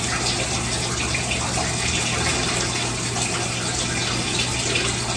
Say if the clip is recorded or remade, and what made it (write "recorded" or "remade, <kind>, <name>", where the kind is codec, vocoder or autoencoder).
recorded